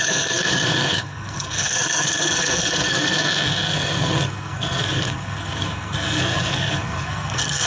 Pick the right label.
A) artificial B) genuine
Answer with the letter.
A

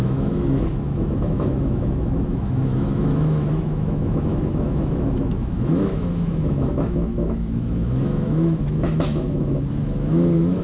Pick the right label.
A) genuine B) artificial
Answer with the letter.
B